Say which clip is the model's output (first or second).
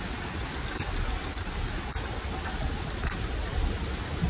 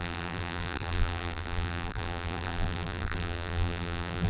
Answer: second